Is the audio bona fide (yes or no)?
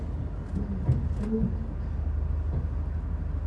yes